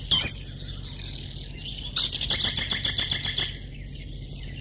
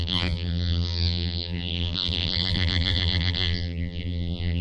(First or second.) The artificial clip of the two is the second